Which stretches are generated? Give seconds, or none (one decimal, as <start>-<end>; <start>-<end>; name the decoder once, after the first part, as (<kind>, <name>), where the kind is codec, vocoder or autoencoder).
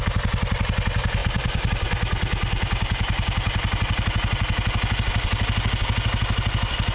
1.2-1.7 (vocoder, BigVGAN v2)